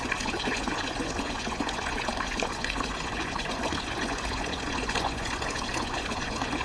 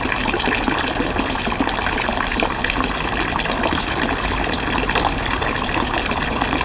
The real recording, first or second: second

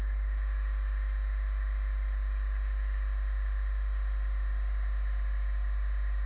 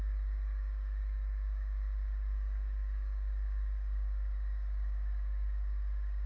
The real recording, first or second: first